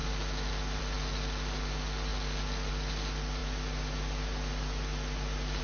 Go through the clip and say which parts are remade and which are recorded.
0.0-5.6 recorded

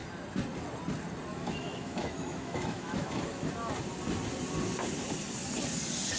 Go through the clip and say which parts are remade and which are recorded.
0.0-1.3 recorded; 1.3-3.5 remade; 3.5-6.2 recorded

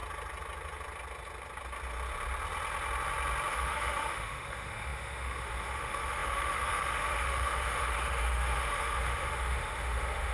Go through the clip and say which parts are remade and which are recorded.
0.0-3.5 recorded; 3.5-10.3 remade

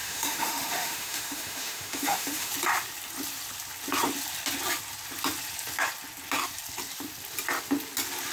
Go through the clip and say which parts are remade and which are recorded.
0.0-2.5 remade; 2.5-8.3 recorded